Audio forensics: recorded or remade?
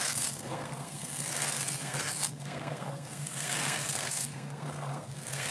remade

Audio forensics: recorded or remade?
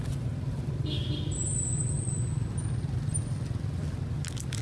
recorded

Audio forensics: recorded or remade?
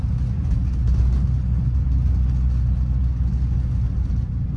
recorded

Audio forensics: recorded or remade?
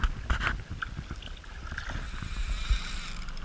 recorded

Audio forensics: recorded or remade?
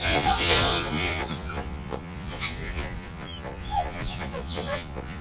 remade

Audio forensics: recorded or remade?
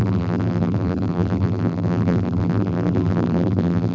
remade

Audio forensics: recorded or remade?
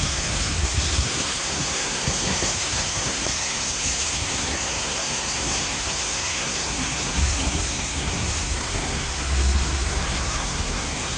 remade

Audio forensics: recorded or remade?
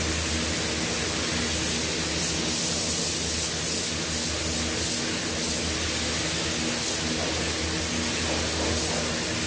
recorded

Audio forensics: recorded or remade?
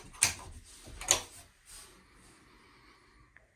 recorded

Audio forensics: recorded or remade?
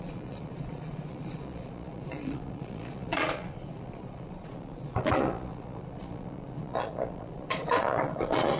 remade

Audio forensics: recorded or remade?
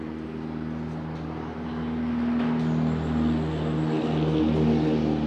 recorded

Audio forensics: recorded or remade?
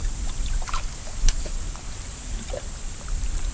recorded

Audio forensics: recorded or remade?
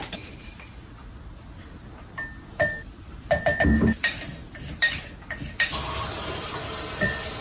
recorded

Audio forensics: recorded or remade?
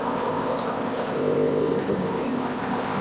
remade